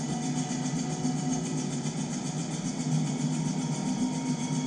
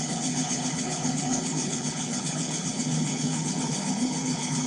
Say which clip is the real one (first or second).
first